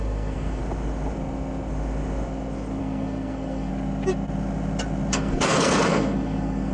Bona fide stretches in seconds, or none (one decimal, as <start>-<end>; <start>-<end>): 0.6-2.8; 3.7-5.1